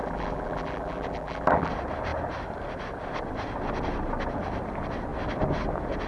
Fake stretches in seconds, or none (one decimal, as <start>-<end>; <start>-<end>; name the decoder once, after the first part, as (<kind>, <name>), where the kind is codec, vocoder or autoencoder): 0.0-1.7 (vocoder, BigVGAN v2)